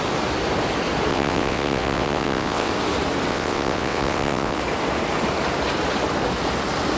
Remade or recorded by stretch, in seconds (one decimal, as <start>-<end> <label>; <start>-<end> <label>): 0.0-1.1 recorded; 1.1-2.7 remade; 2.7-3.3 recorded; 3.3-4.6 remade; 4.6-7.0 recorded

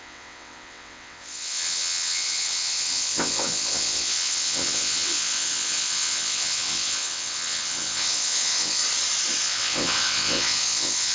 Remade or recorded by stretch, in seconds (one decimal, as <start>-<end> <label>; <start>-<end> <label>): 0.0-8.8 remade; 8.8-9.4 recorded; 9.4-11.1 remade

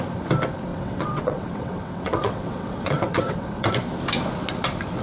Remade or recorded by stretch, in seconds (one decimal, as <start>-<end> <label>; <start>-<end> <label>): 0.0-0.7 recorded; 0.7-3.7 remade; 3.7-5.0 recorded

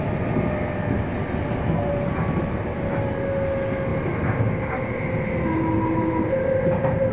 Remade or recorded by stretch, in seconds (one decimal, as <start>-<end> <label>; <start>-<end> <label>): 0.0-7.1 recorded

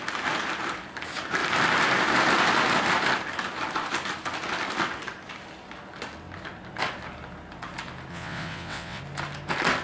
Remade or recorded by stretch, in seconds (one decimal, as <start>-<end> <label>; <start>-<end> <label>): 0.0-8.1 recorded; 8.1-9.0 remade; 9.0-9.8 recorded

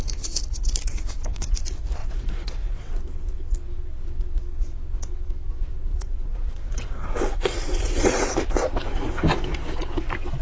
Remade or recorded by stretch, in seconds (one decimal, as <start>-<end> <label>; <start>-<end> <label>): 0.0-0.9 recorded; 0.9-1.5 remade; 1.5-2.0 recorded; 2.0-2.9 remade; 2.9-5.9 recorded; 5.9-8.3 remade; 8.3-10.4 recorded